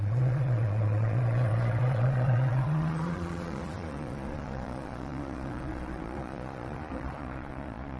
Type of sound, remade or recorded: remade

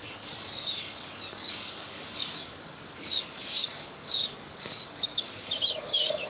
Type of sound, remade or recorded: remade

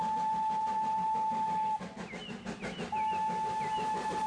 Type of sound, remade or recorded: recorded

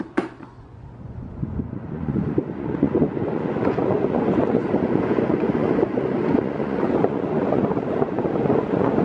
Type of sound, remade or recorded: remade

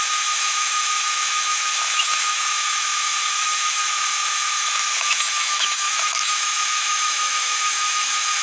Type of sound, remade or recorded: remade